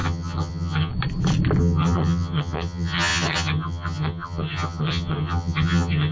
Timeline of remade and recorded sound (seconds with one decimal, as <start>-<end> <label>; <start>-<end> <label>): 0.0-0.9 remade; 0.9-1.6 recorded; 1.6-6.1 remade